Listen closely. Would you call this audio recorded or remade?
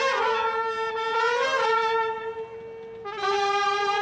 recorded